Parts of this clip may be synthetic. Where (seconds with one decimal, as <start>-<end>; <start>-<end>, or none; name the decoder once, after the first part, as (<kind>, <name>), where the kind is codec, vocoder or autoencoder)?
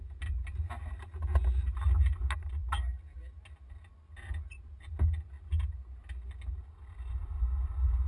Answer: none